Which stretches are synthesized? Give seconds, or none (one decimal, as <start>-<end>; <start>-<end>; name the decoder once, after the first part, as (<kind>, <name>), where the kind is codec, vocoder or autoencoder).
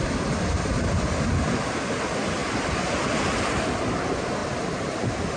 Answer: none